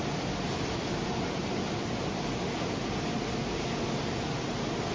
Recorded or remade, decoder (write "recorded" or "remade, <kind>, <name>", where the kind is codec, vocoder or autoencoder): recorded